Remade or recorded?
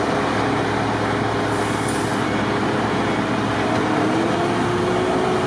recorded